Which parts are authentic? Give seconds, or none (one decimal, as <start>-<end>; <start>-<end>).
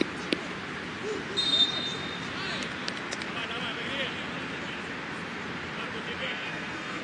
0.0-6.2